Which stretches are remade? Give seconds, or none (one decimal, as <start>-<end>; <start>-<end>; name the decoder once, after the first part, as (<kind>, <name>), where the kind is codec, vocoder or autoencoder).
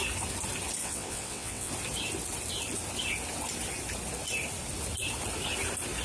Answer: 0.8-1.7 (vocoder, WaveNeXt)